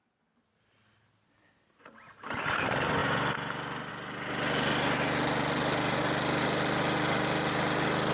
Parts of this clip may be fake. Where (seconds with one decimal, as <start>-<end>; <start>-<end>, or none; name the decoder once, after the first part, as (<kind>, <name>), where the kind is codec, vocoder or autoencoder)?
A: none